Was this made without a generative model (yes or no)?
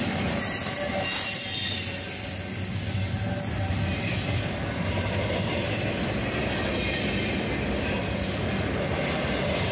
yes